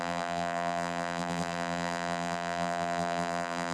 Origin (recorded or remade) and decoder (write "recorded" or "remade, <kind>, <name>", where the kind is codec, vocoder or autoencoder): remade, vocoder, BigVGAN v2